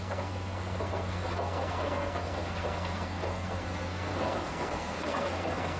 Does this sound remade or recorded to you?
remade